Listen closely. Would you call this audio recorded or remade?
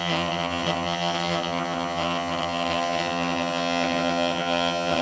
remade